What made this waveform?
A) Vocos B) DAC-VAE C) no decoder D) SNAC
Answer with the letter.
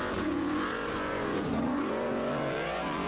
A